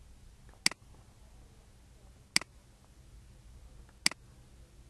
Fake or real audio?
real